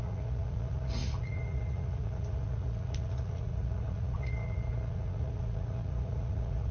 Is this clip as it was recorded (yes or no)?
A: no